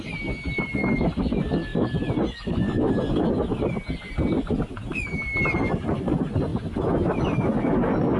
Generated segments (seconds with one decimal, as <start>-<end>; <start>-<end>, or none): none